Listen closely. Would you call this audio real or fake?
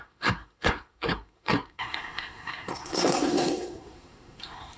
fake